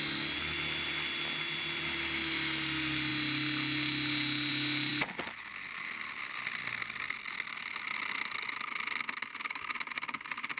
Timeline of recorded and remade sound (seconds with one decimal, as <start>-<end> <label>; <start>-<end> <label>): 0.0-10.6 recorded